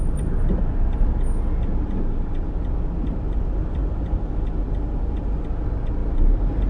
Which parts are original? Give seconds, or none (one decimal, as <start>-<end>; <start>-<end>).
0.0-3.8; 4.3-6.7

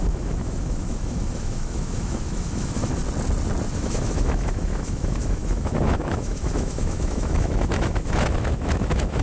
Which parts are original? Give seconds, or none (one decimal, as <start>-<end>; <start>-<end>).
3.0-3.7

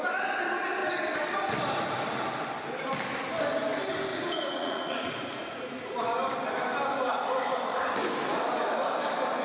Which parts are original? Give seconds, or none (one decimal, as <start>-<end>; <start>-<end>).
0.0-4.1; 6.0-9.4

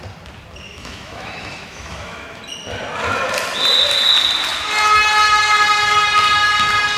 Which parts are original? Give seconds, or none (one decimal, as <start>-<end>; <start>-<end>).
0.0-0.7; 2.4-7.0

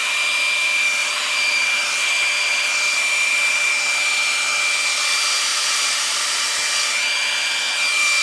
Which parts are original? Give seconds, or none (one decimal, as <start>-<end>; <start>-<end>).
0.0-1.0; 3.7-5.5; 6.6-8.2

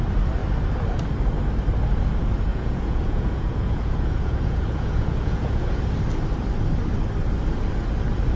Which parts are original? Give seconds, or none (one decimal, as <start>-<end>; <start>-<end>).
0.0-2.5; 5.8-8.4

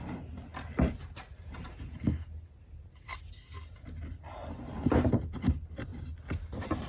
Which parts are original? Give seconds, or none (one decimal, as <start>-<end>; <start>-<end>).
0.0-6.9

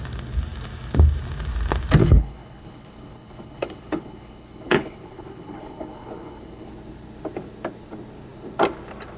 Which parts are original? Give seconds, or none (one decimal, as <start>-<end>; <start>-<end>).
0.0-2.0; 6.7-9.2